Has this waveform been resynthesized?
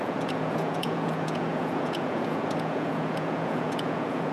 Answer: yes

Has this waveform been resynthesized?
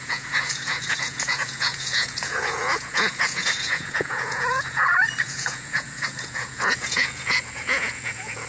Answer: yes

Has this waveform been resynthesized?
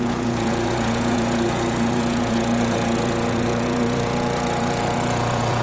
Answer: yes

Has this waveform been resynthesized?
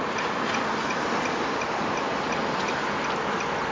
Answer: no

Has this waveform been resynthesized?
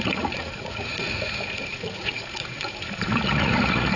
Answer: yes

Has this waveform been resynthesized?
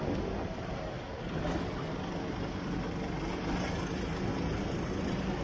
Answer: no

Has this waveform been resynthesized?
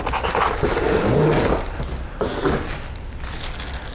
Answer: no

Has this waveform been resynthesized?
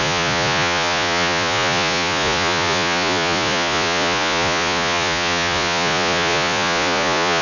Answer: yes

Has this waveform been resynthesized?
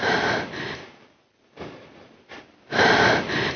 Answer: no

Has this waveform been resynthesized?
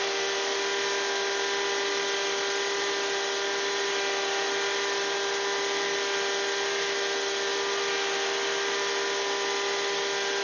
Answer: no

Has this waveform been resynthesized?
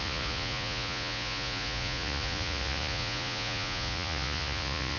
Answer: yes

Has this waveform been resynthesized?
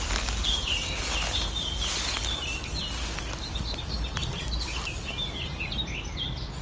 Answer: no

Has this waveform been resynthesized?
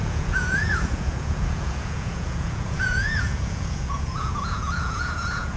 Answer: yes